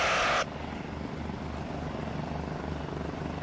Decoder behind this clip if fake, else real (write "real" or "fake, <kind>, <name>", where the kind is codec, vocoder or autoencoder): real